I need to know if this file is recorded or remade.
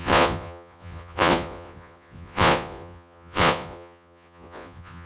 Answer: remade